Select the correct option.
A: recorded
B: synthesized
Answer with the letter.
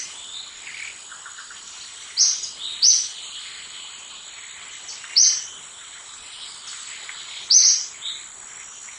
A